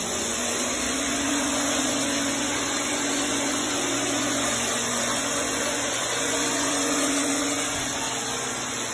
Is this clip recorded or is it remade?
remade